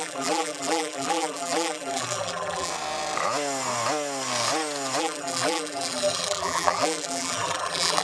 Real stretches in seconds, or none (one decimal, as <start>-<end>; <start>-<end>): 2.7-5.0

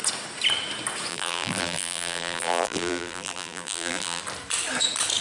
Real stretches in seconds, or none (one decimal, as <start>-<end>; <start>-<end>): 0.0-1.1; 4.2-5.2

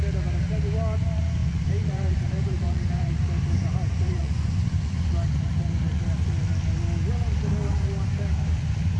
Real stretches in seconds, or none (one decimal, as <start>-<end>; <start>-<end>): 0.0-1.4; 3.1-3.5; 5.1-9.0

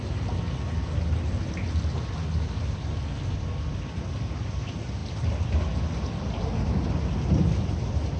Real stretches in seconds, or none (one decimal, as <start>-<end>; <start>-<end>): 0.0-8.2

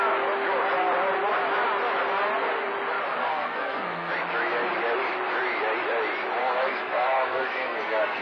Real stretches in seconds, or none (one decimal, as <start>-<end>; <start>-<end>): 0.0-3.2; 4.1-6.4

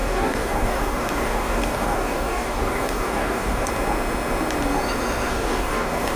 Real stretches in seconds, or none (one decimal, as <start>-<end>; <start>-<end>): 3.7-5.3

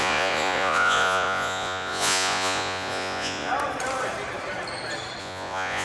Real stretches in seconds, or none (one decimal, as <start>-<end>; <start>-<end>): 3.5-5.2

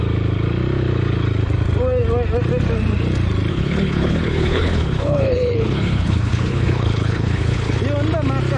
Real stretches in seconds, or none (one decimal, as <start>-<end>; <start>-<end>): 0.0-3.5; 7.8-8.6